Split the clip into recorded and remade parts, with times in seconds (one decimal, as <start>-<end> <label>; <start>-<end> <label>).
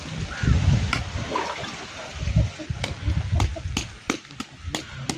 0.0-5.2 recorded